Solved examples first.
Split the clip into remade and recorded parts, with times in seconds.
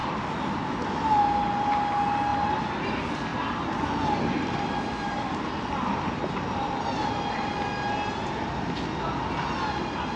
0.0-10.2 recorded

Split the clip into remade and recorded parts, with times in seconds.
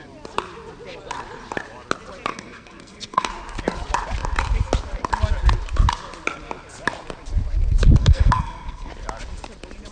0.0-2.3 recorded; 2.3-3.3 remade; 3.3-8.0 recorded; 8.0-8.9 remade; 8.9-9.9 recorded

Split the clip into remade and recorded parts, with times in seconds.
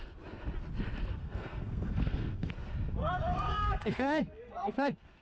0.0-1.2 recorded; 1.2-2.5 remade; 2.5-3.0 recorded; 3.0-5.2 remade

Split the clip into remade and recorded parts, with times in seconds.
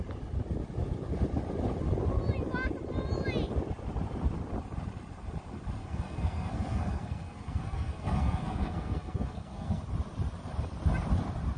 0.0-5.8 recorded; 5.8-9.8 remade; 9.8-11.6 recorded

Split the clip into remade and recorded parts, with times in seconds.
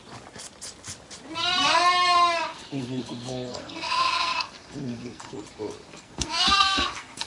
0.0-2.5 recorded; 2.5-5.4 remade; 5.4-5.9 recorded; 5.9-7.3 remade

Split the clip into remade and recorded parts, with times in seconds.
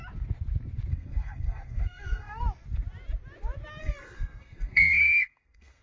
0.0-0.9 recorded; 0.9-2.4 remade; 2.4-3.8 recorded; 3.8-5.8 remade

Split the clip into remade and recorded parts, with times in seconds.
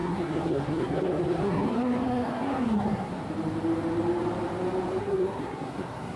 0.0-3.1 remade; 3.1-5.0 recorded; 5.0-6.2 remade